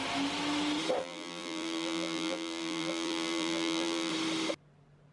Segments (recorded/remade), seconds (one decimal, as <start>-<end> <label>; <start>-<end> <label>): 0.0-1.0 recorded; 1.0-4.1 remade; 4.1-5.1 recorded